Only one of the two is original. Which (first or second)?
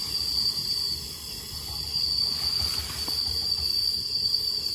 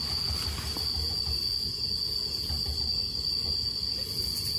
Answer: second